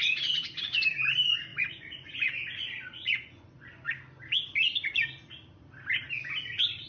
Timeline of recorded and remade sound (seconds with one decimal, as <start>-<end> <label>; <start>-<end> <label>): 0.0-1.5 recorded; 1.5-3.9 remade; 3.9-6.9 recorded